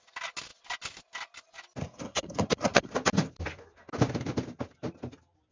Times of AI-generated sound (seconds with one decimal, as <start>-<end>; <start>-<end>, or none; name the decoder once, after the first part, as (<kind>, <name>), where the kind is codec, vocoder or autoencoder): 1.8-2.9 (codec, SNAC)